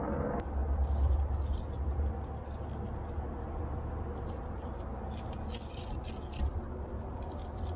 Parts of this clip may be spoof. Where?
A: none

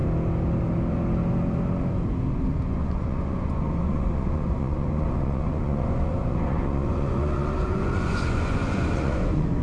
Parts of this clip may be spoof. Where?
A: 2.3-9.6 (vocoder, Vocos)

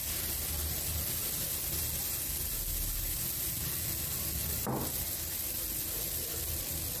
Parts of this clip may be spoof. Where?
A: none

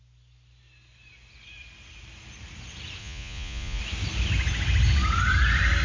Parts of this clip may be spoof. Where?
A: 3.0-3.8 (vocoder, Vocos)

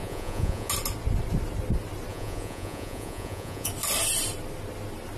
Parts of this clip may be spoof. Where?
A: 0.0-0.7 (vocoder, Vocos); 2.1-3.7

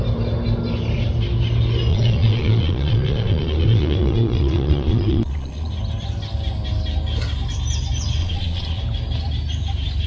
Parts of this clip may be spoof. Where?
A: 1.9-5.7 (vocoder, Vocos); 8.2-8.8